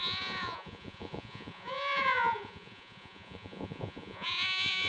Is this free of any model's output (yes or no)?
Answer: no